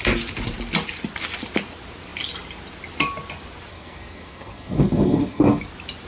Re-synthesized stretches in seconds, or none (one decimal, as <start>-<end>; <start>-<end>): 3.7-5.6